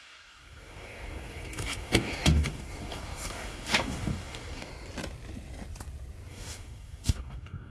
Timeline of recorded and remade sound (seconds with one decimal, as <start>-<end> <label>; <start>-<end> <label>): 0.0-4.7 remade; 4.7-6.3 recorded; 6.3-7.7 remade